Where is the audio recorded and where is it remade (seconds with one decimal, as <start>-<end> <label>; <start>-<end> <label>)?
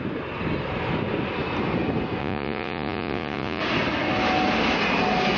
0.0-2.2 recorded; 2.2-3.6 remade; 3.6-5.4 recorded